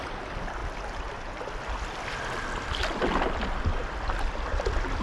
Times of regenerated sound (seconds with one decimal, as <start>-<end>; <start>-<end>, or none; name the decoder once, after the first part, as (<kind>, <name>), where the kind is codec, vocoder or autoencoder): none